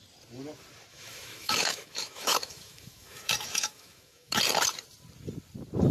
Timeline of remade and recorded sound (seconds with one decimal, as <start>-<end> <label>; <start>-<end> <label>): 0.0-0.9 recorded; 0.9-4.4 remade; 4.4-5.9 recorded